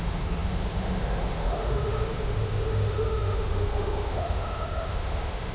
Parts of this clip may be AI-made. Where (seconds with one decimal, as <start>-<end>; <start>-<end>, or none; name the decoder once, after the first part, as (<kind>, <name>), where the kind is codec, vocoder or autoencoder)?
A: 0.0-5.5 (autoencoder, DAC-VAE)